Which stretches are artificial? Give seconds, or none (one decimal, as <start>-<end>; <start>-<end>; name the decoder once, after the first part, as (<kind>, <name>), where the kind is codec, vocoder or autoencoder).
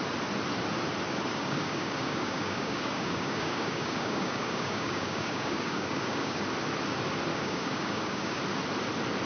1.3-6.4 (codec, DAC); 7.3-8.4